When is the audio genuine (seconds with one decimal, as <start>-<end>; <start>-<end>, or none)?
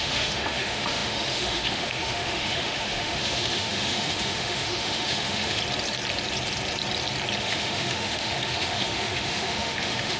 5.6-7.4